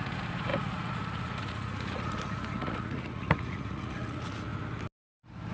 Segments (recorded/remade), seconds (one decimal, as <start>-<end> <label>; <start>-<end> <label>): 0.0-4.5 remade; 4.5-5.5 recorded